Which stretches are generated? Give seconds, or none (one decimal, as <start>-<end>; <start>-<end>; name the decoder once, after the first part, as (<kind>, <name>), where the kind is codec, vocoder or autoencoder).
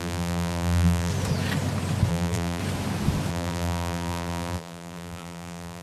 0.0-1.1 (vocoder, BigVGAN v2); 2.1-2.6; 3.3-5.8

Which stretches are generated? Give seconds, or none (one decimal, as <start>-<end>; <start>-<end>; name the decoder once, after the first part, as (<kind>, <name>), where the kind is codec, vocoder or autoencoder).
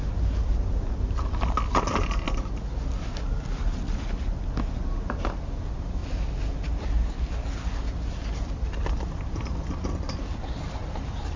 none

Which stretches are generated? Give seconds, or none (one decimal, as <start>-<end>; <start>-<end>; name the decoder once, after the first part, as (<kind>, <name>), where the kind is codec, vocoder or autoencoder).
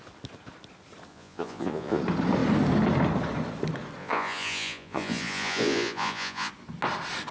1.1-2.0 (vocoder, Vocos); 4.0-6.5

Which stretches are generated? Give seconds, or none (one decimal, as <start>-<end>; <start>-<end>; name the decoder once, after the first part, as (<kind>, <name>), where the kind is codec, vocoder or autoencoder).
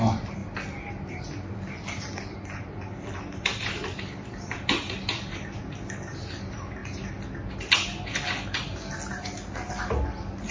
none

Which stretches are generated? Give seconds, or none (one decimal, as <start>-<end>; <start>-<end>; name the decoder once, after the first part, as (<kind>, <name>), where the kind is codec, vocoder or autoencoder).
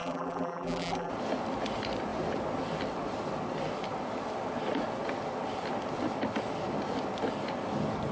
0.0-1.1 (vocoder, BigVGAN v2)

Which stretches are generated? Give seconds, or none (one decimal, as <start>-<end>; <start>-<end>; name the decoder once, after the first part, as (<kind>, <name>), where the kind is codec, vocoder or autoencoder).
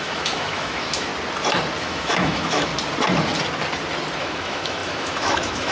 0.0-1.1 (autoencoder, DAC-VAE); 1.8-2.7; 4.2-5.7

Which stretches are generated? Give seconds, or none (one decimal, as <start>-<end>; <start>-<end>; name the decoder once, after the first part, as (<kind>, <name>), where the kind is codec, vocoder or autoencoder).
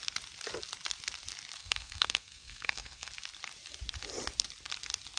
1.6-3.1 (codec, SNAC)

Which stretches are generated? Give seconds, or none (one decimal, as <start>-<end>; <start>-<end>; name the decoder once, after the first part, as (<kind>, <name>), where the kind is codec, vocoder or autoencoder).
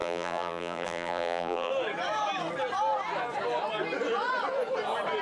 0.0-1.7 (vocoder, BigVGAN v2)